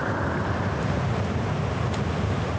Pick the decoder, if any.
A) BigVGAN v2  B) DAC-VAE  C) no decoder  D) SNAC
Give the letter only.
C